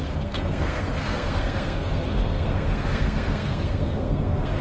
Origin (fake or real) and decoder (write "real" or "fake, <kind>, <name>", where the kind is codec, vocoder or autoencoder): fake, codec, SNAC